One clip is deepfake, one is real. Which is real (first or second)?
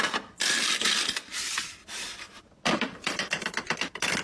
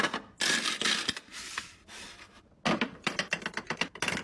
second